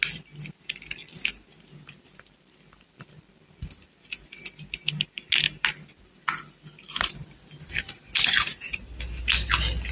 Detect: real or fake real